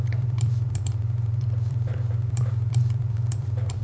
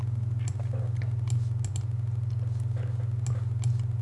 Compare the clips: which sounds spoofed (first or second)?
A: first